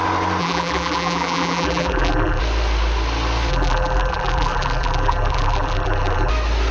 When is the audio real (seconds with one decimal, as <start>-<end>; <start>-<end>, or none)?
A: 0.0-0.4; 2.4-3.5; 6.3-6.7